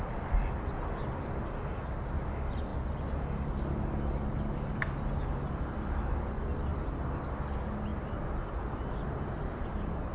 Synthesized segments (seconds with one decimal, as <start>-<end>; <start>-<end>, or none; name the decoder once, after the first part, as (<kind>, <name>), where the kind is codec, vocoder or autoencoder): 7.9-8.5 (vocoder, BigVGAN v2)